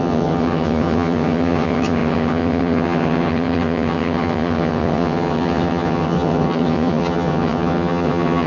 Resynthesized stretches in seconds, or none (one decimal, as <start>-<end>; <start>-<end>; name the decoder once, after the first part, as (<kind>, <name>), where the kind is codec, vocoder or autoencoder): 0.0-8.5 (vocoder, HiFi-GAN)